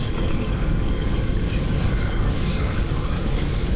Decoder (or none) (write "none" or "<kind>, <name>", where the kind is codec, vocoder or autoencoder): codec, DAC